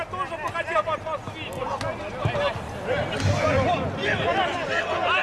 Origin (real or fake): real